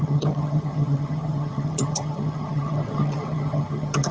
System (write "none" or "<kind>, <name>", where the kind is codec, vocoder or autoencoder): vocoder, HiFi-GAN